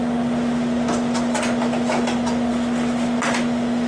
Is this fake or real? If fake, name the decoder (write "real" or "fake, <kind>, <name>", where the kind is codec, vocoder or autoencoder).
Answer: real